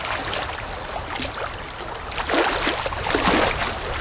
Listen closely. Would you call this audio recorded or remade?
recorded